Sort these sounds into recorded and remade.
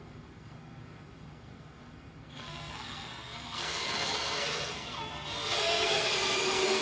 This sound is remade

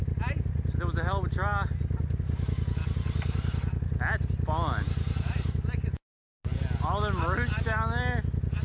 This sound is recorded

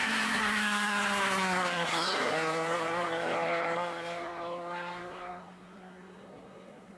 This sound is remade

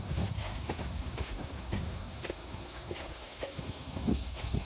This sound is remade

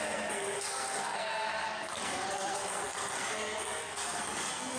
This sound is remade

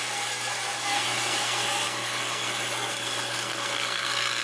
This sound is remade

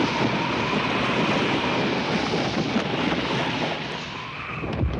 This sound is recorded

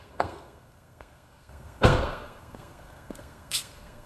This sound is remade